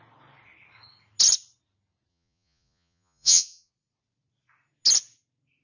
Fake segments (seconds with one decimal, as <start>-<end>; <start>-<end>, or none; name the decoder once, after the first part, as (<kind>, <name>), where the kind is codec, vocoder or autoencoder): 2.1-3.7 (vocoder, Vocos)